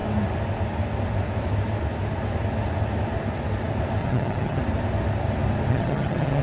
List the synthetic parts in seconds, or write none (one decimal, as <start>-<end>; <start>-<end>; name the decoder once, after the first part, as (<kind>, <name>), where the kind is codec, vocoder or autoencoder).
4.0-4.6 (vocoder, HiFi-GAN); 5.7-6.4